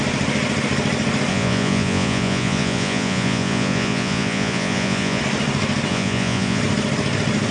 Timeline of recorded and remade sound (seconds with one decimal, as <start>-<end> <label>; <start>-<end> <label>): 0.0-1.3 recorded; 1.3-5.2 remade; 5.2-5.9 recorded; 5.9-6.6 remade; 6.6-7.5 recorded